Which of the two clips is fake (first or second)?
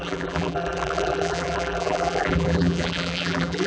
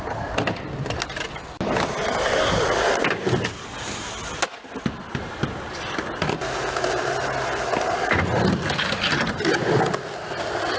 first